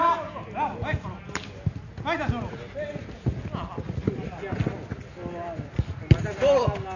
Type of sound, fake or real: real